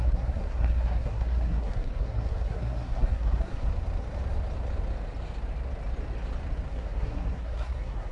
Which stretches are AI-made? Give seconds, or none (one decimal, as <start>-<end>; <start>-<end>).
0.0-3.7; 6.7-8.1